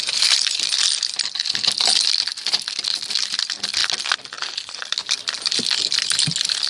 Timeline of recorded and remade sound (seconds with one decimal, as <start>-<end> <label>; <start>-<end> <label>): 0.0-6.7 recorded